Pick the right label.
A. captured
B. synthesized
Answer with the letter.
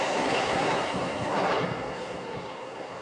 B